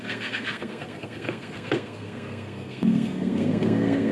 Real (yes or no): no